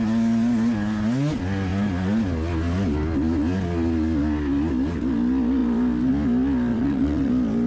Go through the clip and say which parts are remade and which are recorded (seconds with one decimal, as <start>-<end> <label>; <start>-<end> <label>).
0.0-6.7 recorded; 6.7-7.3 remade; 7.3-7.7 recorded